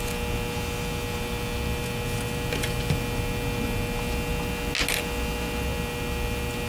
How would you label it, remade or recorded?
recorded